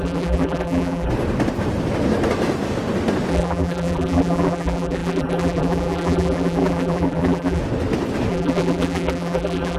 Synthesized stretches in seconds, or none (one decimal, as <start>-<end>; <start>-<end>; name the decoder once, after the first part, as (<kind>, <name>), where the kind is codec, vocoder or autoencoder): 0.0-1.1 (vocoder, BigVGAN v2); 3.3-7.6; 8.3-9.8